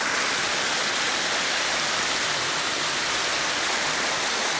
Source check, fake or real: real